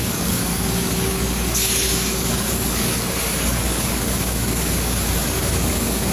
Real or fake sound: fake